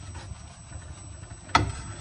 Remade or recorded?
recorded